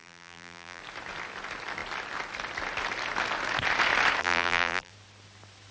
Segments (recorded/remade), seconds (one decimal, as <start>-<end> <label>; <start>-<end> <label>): 0.0-0.8 remade; 0.8-4.2 recorded; 4.2-4.9 remade; 4.9-5.7 recorded